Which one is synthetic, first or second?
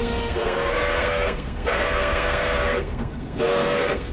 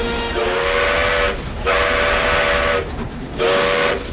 first